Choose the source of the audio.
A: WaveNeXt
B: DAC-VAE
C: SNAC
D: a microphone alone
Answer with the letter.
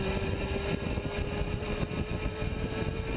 D